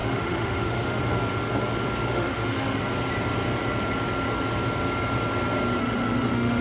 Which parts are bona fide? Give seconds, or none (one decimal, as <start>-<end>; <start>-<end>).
1.0-2.0; 2.8-5.8